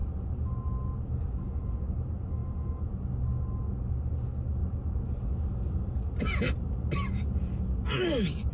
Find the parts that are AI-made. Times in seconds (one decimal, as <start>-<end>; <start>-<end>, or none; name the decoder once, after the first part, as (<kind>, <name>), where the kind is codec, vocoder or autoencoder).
none